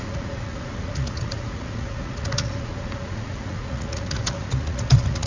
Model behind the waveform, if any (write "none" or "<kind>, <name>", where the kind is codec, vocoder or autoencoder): vocoder, Vocos